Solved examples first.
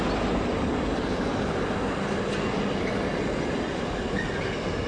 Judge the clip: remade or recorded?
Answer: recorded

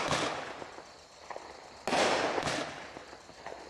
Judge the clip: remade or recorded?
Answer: recorded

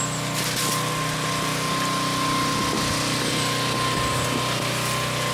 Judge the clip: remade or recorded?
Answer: recorded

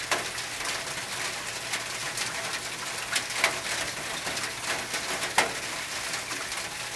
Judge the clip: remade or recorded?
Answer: recorded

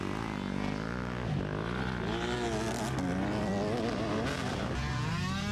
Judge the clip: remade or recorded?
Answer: recorded